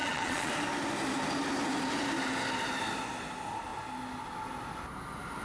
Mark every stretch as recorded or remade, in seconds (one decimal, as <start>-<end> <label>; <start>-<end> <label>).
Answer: 0.0-0.5 remade; 0.5-5.4 recorded

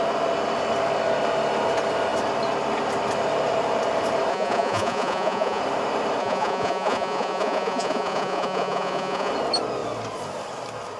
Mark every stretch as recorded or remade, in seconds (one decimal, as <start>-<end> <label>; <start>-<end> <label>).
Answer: 0.0-4.3 recorded; 4.3-5.6 remade; 5.6-6.2 recorded; 6.2-9.3 remade; 9.3-11.0 recorded

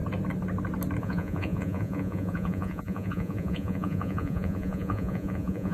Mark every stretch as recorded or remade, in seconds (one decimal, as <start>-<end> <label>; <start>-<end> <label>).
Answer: 0.0-1.0 recorded; 1.0-5.7 remade

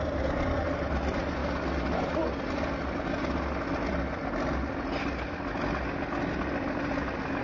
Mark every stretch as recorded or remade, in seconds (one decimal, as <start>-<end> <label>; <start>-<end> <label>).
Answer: 0.0-7.4 recorded

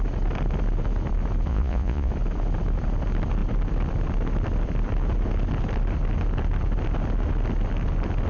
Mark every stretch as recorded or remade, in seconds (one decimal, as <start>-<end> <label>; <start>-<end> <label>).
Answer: 0.0-1.5 recorded; 1.5-2.1 remade; 2.1-8.3 recorded

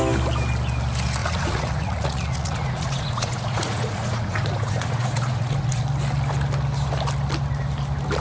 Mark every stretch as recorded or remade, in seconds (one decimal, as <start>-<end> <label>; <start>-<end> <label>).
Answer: 0.0-1.2 recorded; 1.2-5.8 remade; 5.8-8.2 recorded

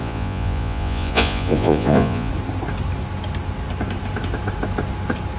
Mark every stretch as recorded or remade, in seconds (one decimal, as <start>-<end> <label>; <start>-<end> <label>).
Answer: 0.0-2.3 remade; 2.3-5.4 recorded